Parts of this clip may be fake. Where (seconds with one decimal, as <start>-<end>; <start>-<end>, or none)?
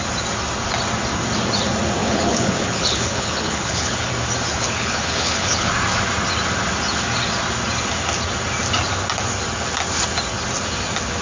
2.0-4.1; 4.5-5.7